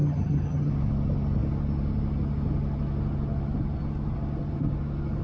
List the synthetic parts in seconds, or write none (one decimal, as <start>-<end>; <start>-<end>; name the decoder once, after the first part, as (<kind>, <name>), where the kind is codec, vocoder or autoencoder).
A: 0.0-0.7 (vocoder, HiFi-GAN)